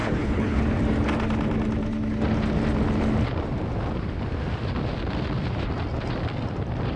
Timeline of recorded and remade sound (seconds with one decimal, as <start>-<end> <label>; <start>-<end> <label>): 0.0-0.6 remade; 0.6-7.0 recorded